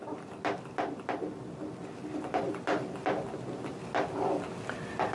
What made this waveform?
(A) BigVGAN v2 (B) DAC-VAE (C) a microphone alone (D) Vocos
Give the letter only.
C